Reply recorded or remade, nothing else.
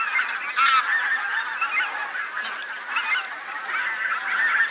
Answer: recorded